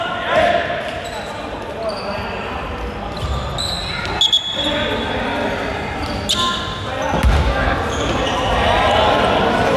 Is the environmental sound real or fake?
real